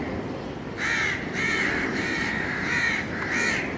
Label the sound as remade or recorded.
recorded